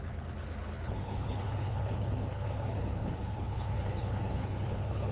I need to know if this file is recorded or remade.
remade